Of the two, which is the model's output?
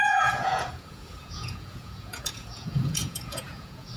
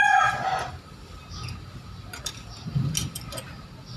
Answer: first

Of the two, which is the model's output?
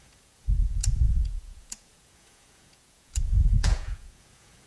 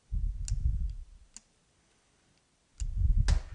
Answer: first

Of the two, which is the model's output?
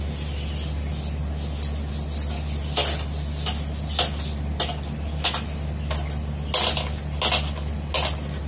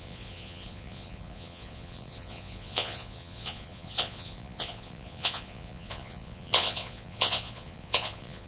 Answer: second